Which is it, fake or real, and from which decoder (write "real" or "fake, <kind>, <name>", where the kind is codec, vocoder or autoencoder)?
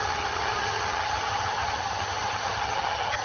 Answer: fake, vocoder, HiFi-GAN